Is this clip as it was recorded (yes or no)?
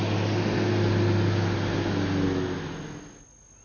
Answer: yes